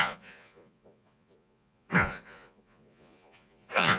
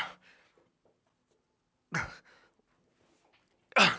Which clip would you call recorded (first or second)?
second